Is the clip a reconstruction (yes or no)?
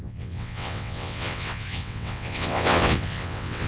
yes